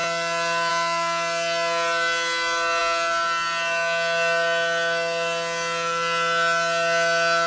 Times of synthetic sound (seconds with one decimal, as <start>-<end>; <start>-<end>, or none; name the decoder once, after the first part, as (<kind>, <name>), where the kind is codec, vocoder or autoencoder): none